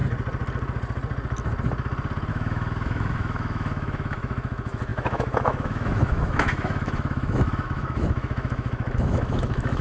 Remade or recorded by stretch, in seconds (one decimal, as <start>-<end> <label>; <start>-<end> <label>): 0.0-2.3 recorded; 2.3-9.8 remade